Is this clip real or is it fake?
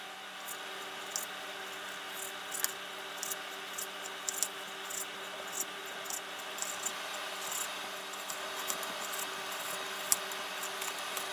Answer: real